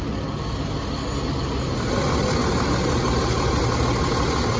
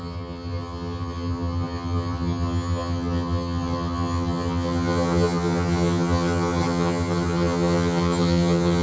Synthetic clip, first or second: second